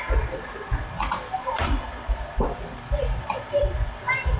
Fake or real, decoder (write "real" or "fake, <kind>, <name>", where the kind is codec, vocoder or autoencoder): fake, vocoder, BigVGAN v2